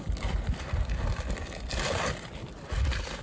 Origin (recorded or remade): recorded